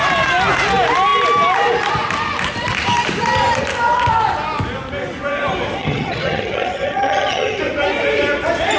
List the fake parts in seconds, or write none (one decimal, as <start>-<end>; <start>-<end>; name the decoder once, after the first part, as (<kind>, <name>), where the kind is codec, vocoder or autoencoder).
5.8-7.6 (vocoder, HiFi-GAN)